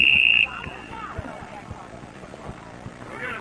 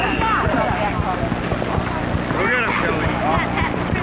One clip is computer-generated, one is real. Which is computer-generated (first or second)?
first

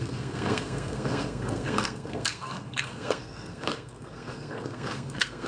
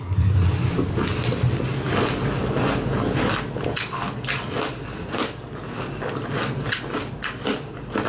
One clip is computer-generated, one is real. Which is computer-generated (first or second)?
first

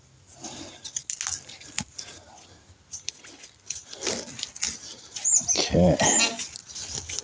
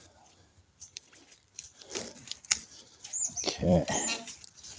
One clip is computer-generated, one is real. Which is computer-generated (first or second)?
second